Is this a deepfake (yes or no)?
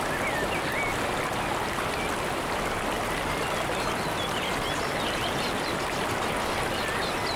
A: no